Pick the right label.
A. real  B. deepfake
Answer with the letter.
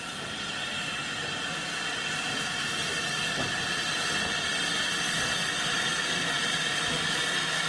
A